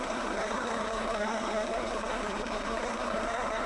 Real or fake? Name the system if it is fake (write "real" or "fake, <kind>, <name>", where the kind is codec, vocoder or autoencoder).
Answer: fake, codec, SNAC